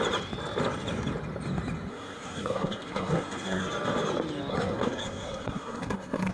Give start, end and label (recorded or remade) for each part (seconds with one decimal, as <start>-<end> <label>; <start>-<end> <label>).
0.0-1.9 recorded; 1.9-3.7 remade; 3.7-4.5 recorded; 4.5-6.3 remade